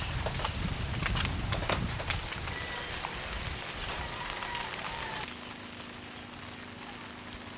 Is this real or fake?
real